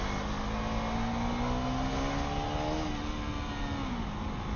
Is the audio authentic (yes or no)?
yes